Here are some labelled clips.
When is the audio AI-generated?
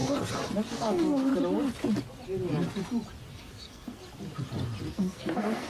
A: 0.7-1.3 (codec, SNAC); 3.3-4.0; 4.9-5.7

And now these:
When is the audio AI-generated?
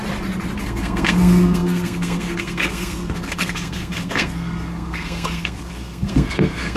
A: 0.6-6.8 (codec, SNAC)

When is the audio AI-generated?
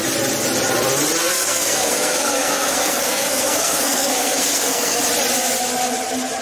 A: 1.2-5.0 (codec, SNAC)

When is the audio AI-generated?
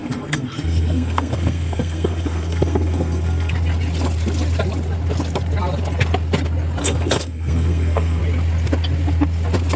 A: 0.0-3.5 (codec, SNAC); 6.8-8.2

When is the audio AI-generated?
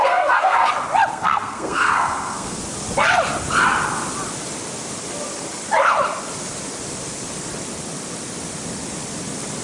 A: 0.0-0.7 (codec, SNAC); 1.1-2.6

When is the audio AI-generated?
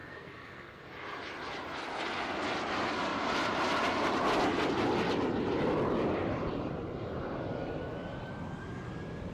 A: 0.0-0.8 (codec, SNAC)